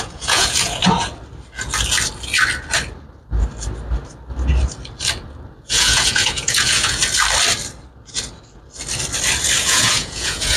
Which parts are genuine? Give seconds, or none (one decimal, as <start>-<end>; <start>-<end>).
0.8-5.6; 7.0-9.6